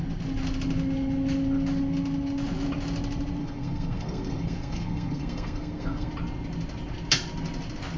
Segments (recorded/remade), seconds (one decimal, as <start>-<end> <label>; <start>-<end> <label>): 0.0-3.4 recorded; 3.4-6.1 remade; 6.1-8.0 recorded